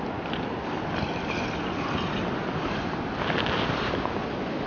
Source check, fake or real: real